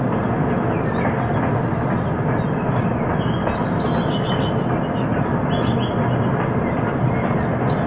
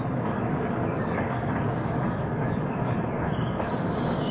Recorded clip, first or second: first